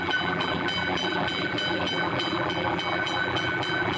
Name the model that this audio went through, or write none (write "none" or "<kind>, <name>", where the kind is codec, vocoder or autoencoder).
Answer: vocoder, BigVGAN v2